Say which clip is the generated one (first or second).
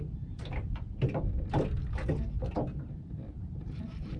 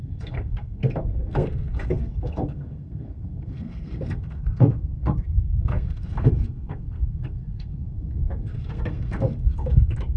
second